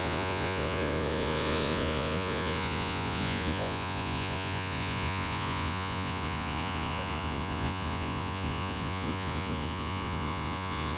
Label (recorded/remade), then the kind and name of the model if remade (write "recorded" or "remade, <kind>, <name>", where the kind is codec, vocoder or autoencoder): remade, vocoder, Vocos